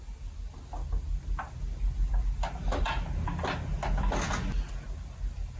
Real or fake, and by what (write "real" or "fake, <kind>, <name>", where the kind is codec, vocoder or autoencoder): real